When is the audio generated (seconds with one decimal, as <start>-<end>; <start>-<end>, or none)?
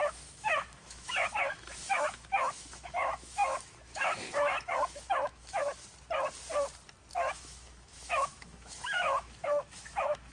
0.0-5.6; 7.1-10.3